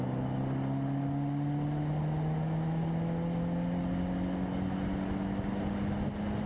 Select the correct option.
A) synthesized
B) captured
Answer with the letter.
B